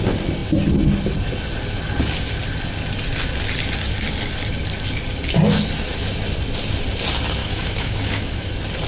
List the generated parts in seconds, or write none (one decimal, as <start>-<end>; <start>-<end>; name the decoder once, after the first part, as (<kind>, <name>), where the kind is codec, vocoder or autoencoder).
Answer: 7.4-8.5 (autoencoder, DAC-VAE)